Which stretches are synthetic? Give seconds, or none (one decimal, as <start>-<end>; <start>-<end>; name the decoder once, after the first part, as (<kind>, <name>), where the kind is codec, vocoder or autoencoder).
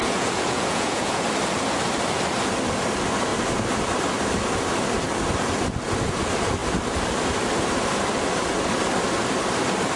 0.0-1.3 (vocoder, Vocos)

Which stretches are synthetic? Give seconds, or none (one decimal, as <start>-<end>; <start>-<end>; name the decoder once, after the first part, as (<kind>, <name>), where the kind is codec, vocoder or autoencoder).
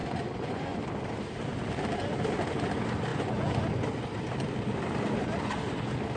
0.0-0.8 (vocoder, Vocos); 3.1-3.6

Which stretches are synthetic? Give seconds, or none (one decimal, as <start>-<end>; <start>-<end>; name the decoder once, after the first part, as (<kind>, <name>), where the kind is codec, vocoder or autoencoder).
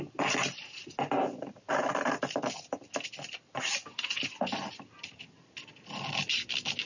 none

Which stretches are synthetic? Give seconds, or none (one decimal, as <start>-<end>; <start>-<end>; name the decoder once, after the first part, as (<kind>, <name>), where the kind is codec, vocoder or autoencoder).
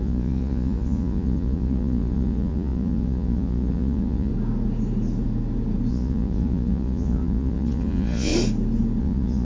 0.0-4.3 (vocoder, Vocos); 5.9-8.3; 9.0-9.4